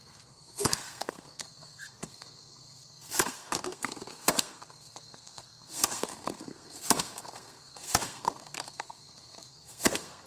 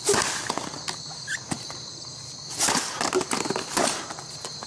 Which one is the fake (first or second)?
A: first